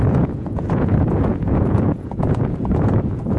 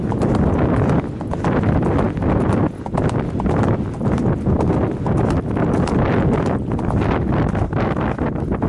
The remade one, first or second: first